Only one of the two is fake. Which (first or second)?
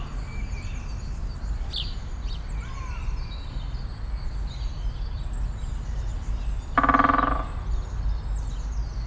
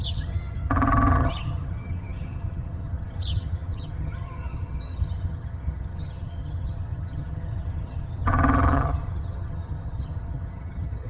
second